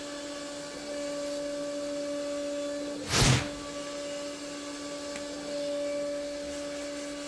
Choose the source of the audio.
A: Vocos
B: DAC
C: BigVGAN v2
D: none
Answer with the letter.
D